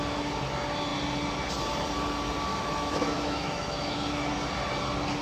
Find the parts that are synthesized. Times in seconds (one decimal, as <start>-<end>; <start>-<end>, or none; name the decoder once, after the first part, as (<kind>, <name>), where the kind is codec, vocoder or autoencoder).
2.5-4.3 (autoencoder, DAC-VAE)